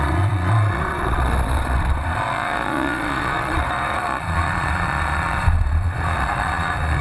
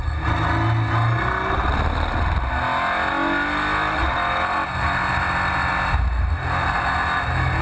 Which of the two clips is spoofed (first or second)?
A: first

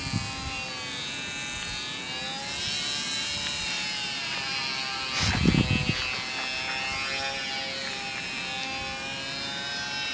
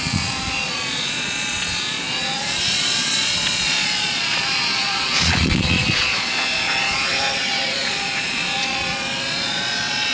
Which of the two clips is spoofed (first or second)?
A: second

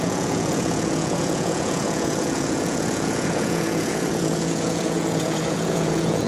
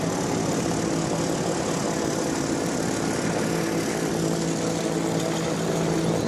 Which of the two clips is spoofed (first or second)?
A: first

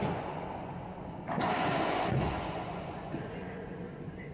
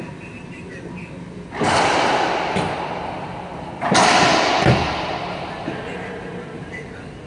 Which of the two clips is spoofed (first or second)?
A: first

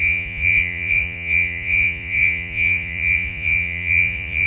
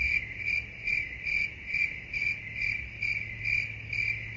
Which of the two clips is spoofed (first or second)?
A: first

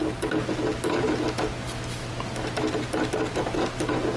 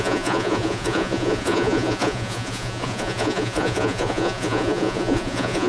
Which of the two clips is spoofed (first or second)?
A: second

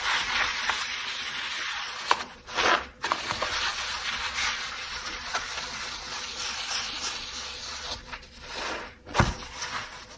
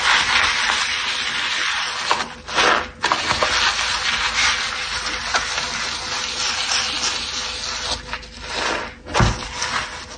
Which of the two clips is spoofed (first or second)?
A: first